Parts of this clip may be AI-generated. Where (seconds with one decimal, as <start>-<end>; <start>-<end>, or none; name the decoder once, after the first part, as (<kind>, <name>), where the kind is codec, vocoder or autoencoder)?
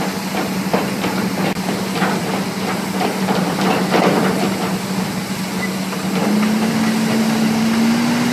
none